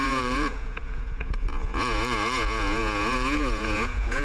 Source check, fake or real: fake